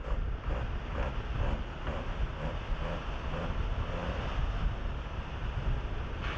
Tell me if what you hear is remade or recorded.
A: recorded